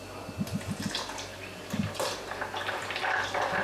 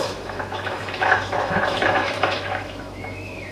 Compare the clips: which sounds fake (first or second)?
second